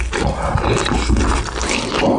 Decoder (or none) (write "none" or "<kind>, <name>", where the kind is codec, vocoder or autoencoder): none